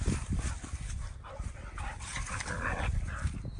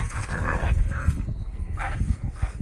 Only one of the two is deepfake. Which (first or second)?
second